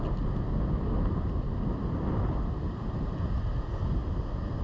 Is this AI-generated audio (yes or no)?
no